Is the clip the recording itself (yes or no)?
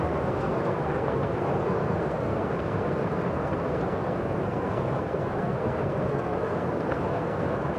no